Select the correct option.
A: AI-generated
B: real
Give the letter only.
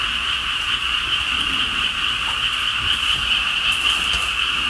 A